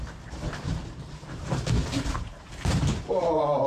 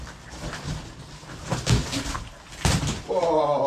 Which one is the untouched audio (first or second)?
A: second